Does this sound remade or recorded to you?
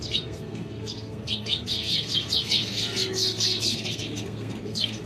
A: remade